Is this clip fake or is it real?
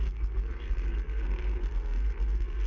fake